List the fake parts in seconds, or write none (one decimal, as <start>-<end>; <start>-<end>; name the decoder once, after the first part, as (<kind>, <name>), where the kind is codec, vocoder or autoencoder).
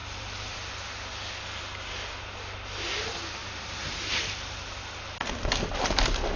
0.0-0.7 (vocoder, BigVGAN v2); 3.4-4.8